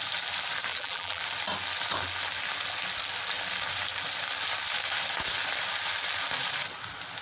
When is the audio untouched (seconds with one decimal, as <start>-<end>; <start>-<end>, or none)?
0.0-0.7; 1.2-7.2